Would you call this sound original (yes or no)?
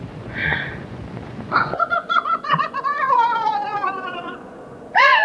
no